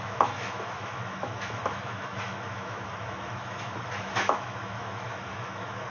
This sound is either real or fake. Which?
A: fake